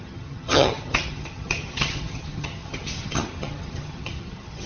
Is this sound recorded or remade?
remade